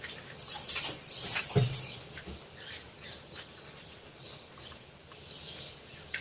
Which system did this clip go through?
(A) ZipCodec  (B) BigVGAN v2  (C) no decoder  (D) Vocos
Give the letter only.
C